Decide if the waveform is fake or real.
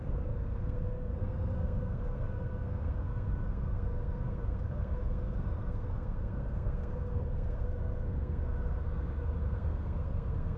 fake